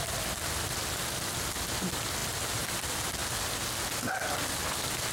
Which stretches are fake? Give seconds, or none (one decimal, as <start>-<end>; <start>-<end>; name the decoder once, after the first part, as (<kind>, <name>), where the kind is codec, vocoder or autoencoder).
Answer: none